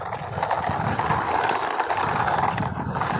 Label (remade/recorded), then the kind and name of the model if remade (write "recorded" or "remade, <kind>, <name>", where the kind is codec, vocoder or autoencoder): recorded